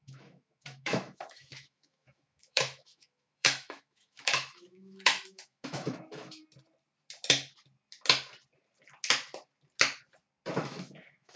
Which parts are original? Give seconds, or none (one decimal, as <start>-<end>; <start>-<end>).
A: 6.4-10.6